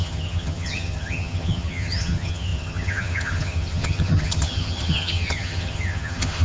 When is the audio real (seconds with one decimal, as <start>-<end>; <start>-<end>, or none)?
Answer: none